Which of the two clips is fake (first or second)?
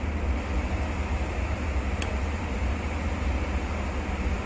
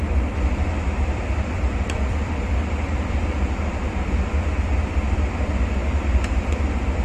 second